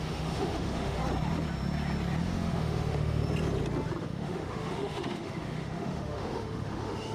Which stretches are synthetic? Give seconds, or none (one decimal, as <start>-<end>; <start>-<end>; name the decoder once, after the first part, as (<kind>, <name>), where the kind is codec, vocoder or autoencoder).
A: 0.0-1.0 (autoencoder, DAC-VAE); 2.2-3.2; 4.0-7.1